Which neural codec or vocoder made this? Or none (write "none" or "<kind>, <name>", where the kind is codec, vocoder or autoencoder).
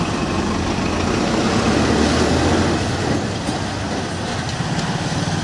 none